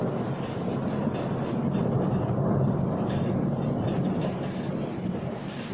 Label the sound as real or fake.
real